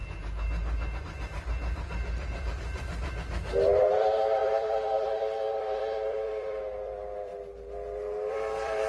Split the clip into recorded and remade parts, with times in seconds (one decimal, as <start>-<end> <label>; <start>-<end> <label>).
0.0-1.0 recorded; 1.0-7.3 remade; 7.3-8.3 recorded; 8.3-8.9 remade